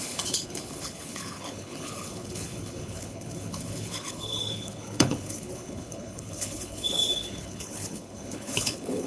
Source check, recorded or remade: remade